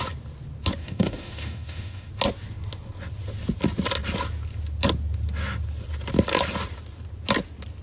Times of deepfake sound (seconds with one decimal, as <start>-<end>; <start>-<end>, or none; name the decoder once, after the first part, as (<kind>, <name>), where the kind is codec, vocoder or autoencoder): 0.8-2.1 (autoencoder, DAC-VAE)